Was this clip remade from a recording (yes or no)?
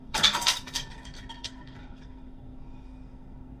yes